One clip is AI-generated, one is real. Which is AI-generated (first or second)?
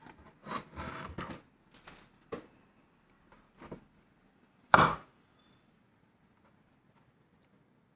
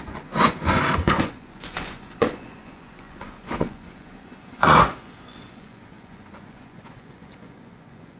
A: second